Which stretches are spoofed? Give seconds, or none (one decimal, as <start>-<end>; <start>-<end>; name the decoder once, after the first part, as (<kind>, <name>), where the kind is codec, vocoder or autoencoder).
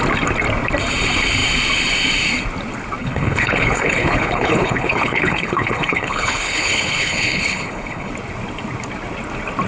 3.0-8.1 (codec, HILCodec)